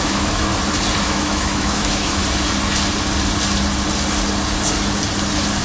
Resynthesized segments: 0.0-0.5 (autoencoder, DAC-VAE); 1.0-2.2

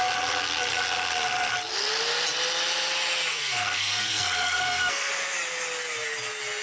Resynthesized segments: 3.3-5.1 (codec, SNAC)

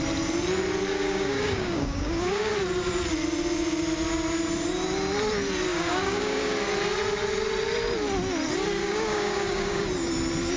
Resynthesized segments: 0.9-2.5 (codec, DAC); 5.7-6.5; 8.8-9.8

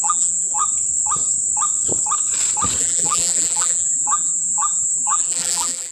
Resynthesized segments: 0.0-0.6 (vocoder, BigVGAN v2); 2.8-5.9

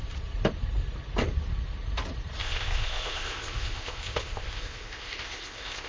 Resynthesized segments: 2.4-5.9 (codec, ZipCodec)